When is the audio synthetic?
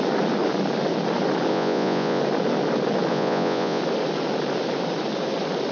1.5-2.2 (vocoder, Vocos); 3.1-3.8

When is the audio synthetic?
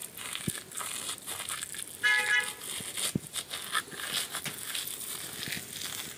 none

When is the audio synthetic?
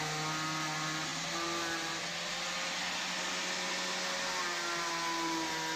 none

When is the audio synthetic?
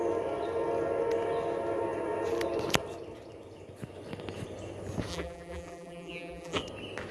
5.1-6.6 (vocoder, BigVGAN v2)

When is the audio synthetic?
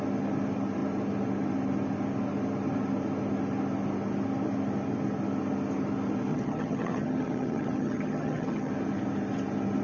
6.3-8.7 (vocoder, HiFi-GAN)